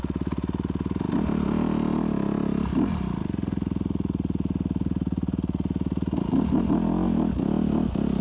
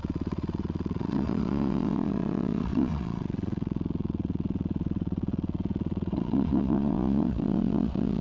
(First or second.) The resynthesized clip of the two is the second